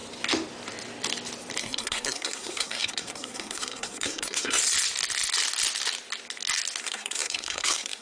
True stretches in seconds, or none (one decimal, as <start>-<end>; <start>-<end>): 0.0-1.6; 4.6-6.8